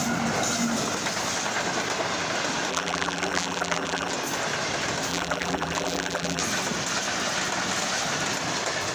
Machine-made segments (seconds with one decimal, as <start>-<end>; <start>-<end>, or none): 2.7-4.1; 5.1-6.4